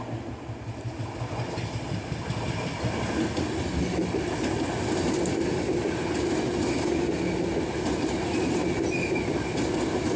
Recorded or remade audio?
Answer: recorded